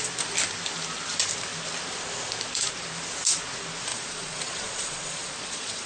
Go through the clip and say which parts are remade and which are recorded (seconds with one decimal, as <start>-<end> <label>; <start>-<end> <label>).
0.0-3.9 recorded; 3.9-5.9 remade

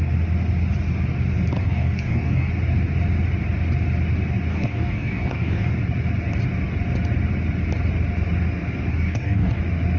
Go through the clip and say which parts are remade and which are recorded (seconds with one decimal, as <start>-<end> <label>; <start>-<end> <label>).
0.0-1.6 recorded; 1.6-2.5 remade; 2.5-4.5 recorded; 4.5-5.7 remade; 5.7-8.9 recorded; 8.9-9.6 remade; 9.6-10.0 recorded